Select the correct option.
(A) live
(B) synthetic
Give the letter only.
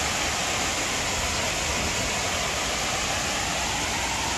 A